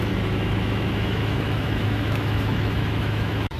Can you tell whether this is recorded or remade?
remade